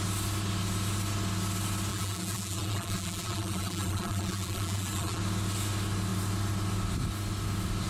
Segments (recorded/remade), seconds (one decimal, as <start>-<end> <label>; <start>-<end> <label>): 0.0-1.9 recorded; 1.9-5.2 remade; 5.2-7.9 recorded